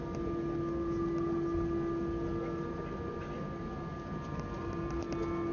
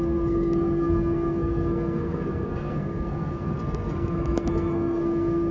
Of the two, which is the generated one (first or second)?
second